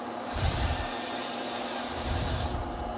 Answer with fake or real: fake